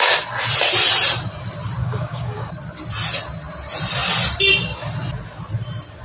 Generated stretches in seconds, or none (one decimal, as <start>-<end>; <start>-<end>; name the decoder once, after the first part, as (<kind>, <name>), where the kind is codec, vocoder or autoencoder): 1.8-2.5 (codec, DAC)